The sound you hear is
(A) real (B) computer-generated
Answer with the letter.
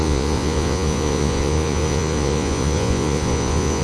B